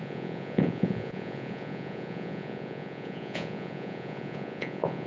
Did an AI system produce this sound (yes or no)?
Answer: yes